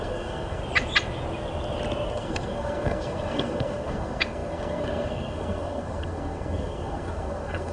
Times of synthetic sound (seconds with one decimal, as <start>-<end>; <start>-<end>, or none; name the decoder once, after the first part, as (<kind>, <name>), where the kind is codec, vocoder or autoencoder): 0.0-0.6 (codec, SNAC); 2.1-7.7

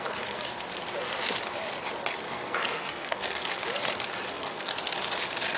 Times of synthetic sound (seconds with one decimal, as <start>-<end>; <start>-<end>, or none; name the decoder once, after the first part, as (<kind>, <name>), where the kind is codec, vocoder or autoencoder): 0.0-0.7 (codec, SNAC); 2.2-3.6; 4.3-4.7

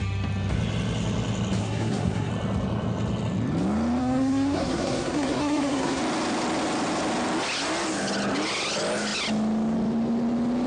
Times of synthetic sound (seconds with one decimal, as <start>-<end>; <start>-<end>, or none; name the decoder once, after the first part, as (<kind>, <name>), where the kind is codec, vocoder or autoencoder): 1.6-2.3 (codec, SNAC); 4.0-6.0

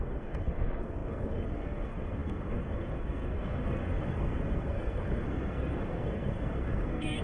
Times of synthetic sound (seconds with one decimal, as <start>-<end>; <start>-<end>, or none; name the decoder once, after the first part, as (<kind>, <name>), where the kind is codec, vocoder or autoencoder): 0.0-7.2 (codec, SNAC)